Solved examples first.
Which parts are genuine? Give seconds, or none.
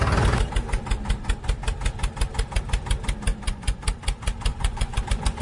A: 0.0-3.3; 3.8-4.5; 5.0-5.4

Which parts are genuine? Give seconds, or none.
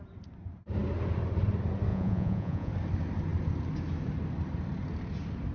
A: 0.0-1.9; 2.7-5.5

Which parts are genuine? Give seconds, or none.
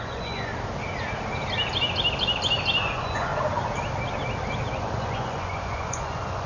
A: 0.5-2.8; 3.3-4.7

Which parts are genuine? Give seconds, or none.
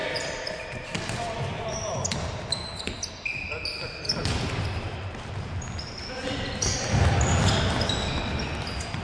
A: 0.0-9.0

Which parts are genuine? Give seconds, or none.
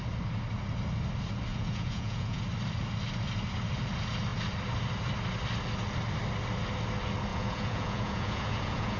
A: 0.0-1.5; 2.4-7.3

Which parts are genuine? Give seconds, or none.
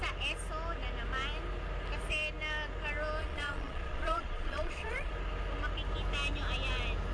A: 0.0-3.2; 5.1-7.1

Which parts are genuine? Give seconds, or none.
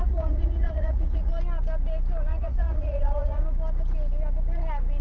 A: 1.3-2.3; 3.4-5.0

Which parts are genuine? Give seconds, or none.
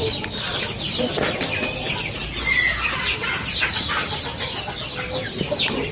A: 0.0-5.9